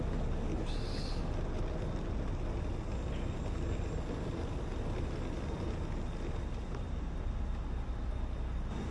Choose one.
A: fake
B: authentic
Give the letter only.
B